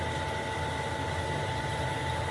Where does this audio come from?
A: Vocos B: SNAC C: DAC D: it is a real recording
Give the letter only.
D